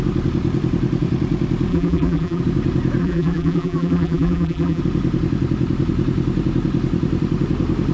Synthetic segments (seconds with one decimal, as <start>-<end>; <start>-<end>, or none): 1.7-2.4; 3.0-4.8